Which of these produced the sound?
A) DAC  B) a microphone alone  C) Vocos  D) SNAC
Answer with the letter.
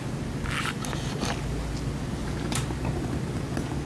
B